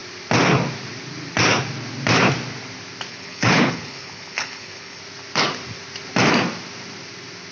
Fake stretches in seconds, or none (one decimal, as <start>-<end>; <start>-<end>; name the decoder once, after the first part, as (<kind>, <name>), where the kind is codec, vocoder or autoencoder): 3.1-5.0 (codec, HILCodec)